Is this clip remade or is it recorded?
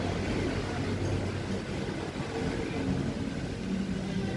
recorded